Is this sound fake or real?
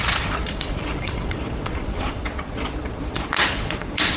fake